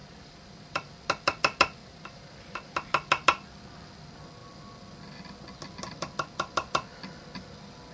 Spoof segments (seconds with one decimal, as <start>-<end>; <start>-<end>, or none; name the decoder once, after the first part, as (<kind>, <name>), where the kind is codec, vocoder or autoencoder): 0.0-0.9 (vocoder, BigVGAN v2); 1.8-2.7

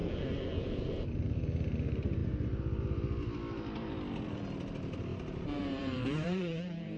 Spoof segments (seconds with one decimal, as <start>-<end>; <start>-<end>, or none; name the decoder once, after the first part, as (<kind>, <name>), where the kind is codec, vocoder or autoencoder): 0.0-2.2 (vocoder, BigVGAN v2); 4.3-7.0

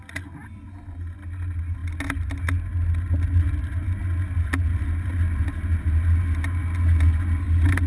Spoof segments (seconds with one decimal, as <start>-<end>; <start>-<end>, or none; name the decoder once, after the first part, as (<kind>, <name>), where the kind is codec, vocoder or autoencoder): 0.4-1.2 (vocoder, BigVGAN v2)

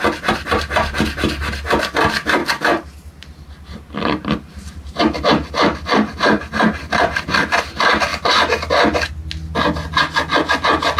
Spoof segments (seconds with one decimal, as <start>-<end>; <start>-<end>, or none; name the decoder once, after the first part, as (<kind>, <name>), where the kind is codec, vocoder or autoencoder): 2.4-7.2 (vocoder, BigVGAN v2)